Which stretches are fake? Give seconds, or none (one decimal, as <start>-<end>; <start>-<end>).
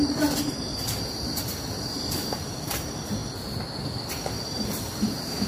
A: 0.0-3.2; 4.1-5.5